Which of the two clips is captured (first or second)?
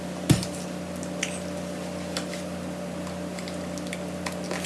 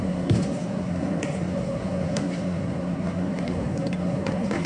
first